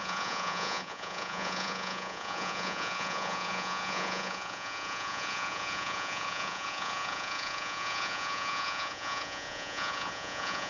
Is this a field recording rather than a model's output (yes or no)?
no